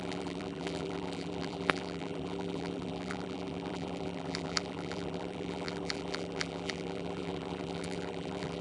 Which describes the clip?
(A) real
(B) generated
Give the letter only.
B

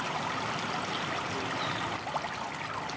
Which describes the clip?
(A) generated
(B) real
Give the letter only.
B